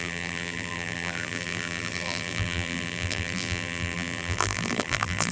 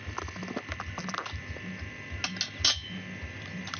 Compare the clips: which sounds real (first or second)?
second